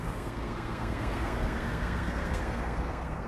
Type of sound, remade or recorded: remade